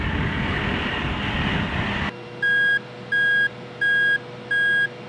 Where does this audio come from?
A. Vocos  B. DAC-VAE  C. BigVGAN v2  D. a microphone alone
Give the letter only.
D